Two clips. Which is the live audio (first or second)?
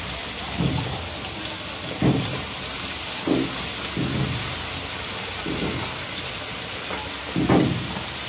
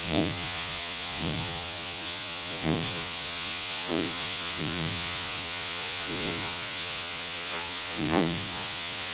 first